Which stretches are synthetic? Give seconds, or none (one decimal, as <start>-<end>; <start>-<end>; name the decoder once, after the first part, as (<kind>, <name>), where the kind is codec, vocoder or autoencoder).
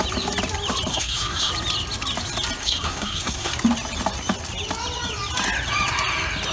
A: 0.9-1.5 (codec, SNAC); 2.6-3.5